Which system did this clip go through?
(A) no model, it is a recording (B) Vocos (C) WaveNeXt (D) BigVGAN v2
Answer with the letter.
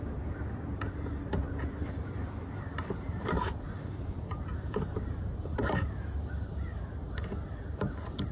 D